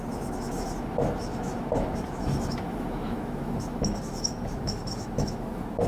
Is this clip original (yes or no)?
no